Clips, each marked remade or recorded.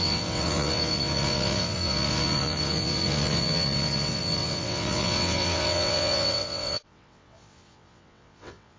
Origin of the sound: remade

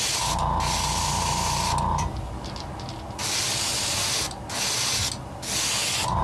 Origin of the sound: recorded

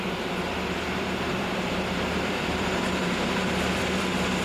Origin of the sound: remade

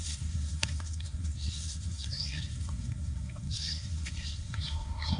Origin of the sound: remade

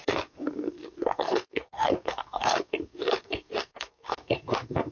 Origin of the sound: remade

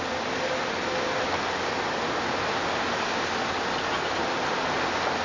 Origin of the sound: recorded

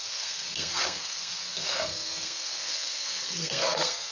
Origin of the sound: remade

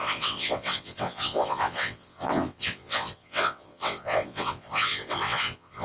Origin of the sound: remade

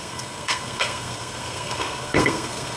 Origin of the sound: remade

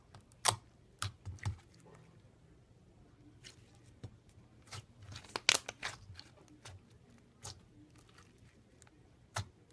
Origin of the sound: recorded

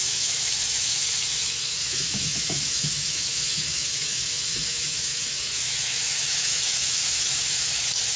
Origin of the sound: remade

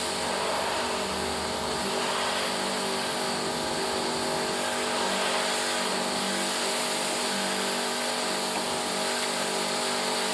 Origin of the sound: recorded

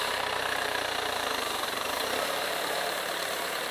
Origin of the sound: remade